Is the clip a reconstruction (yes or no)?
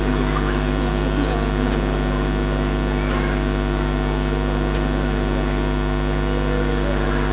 no